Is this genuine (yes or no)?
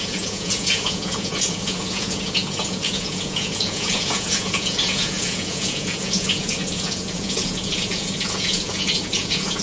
no